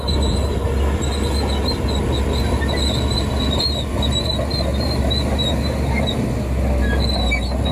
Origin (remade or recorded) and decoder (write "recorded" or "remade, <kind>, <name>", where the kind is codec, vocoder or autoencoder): recorded